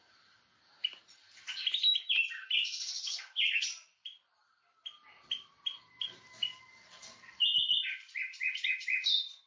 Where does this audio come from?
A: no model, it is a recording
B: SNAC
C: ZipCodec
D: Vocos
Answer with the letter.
A